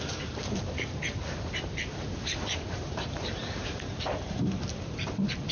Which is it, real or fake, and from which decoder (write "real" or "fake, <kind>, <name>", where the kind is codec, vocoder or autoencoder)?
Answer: fake, vocoder, BigVGAN v2